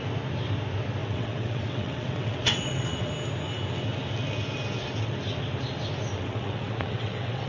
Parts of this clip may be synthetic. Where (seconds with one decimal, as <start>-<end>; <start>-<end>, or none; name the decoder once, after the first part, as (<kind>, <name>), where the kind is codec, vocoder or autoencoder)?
1.0-3.1 (vocoder, WaveNeXt); 6.2-7.5